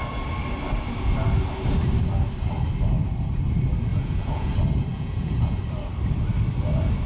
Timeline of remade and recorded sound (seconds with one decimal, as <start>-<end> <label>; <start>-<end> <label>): 0.0-3.9 recorded; 3.9-4.5 remade; 4.5-4.9 recorded; 4.9-5.6 remade; 5.6-7.1 recorded